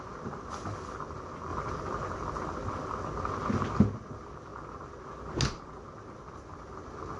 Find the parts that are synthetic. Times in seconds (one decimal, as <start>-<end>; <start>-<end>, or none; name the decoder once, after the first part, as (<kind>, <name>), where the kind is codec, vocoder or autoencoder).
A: none

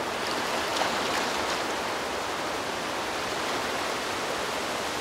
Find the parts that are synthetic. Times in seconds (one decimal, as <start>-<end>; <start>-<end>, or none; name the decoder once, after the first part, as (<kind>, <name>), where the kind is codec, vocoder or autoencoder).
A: none

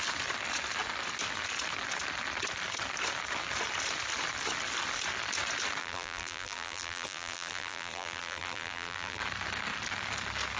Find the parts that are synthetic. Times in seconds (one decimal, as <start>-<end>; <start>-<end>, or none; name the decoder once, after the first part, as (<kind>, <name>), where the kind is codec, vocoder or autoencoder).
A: 5.8-9.2 (vocoder, BigVGAN v2)